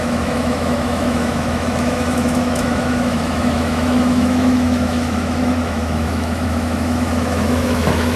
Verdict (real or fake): fake